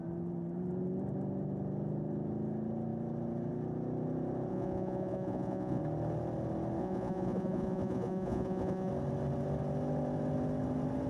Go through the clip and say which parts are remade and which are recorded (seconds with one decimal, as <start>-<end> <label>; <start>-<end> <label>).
0.0-4.5 recorded; 4.5-5.8 remade; 5.8-6.8 recorded; 6.8-8.9 remade; 8.9-11.1 recorded